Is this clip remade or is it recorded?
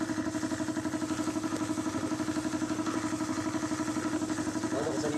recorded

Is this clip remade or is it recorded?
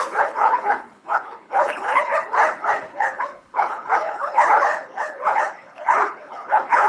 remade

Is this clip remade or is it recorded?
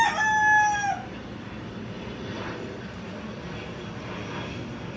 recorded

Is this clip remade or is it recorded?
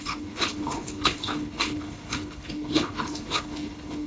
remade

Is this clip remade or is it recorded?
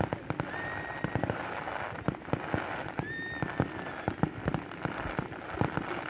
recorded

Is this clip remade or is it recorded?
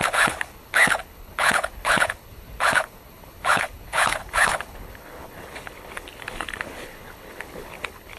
remade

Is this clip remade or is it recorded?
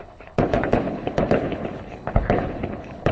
remade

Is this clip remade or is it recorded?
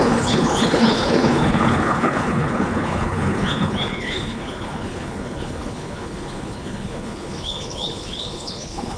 remade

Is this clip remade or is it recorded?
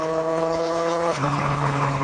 remade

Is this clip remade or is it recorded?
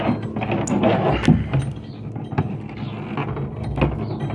recorded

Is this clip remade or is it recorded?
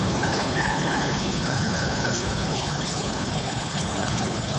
remade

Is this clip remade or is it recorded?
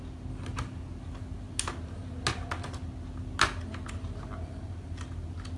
recorded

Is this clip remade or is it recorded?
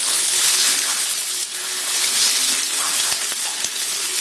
remade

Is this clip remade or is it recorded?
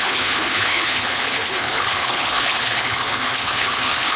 remade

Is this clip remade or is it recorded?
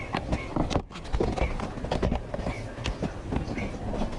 recorded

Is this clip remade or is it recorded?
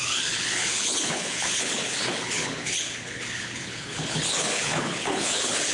remade